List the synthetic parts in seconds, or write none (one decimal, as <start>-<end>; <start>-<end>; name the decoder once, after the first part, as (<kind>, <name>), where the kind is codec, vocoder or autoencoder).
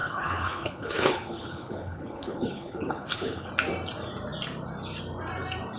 0.0-3.5 (codec, HILCodec)